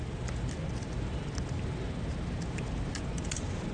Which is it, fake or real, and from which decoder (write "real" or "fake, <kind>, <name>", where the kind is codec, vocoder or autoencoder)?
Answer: real